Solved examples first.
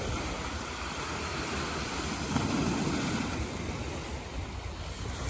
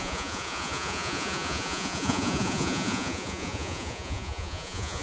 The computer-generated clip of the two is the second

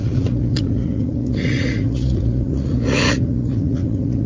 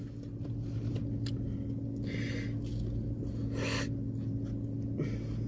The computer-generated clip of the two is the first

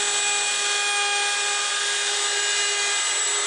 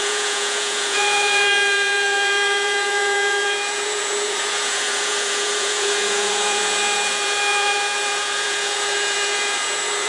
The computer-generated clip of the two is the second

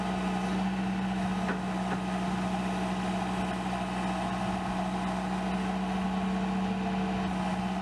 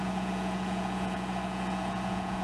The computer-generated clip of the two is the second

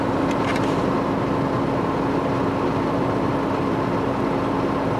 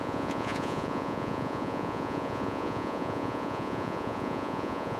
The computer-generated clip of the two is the second